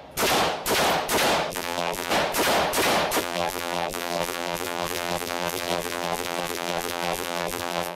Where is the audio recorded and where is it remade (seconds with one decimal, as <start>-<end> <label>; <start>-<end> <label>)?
0.0-1.5 recorded; 1.5-2.1 remade; 2.1-3.2 recorded; 3.2-8.0 remade